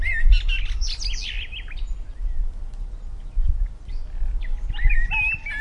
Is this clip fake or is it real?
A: real